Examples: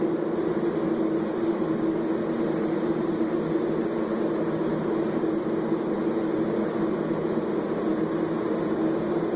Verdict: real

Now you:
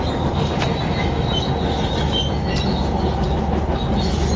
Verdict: real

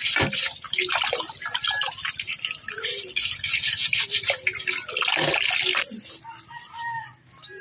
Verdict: real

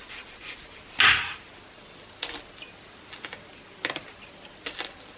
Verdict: real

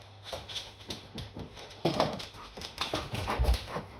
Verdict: fake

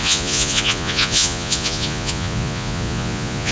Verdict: fake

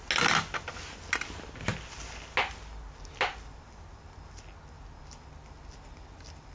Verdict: real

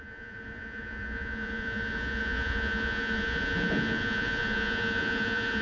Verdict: fake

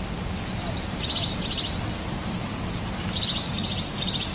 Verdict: real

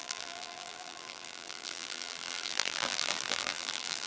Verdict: fake